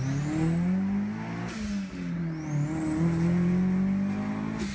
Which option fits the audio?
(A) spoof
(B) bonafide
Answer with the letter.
B